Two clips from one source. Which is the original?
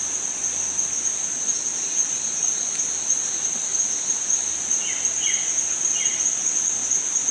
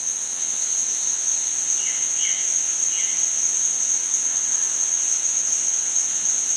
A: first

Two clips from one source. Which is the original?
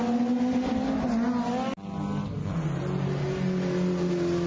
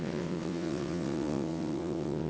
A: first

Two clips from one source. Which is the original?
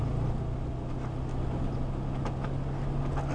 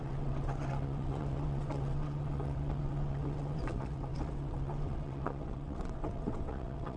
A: first